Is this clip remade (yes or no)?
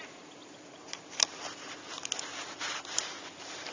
no